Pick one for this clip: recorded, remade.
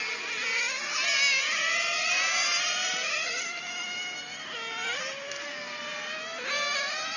recorded